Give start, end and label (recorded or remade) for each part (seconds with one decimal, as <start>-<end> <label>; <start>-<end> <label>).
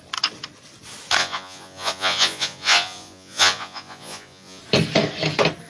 0.0-1.2 recorded; 1.2-4.6 remade; 4.6-5.7 recorded